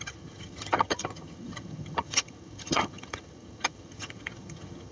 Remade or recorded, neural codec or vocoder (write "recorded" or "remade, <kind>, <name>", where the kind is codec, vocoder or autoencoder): remade, vocoder, HiFi-GAN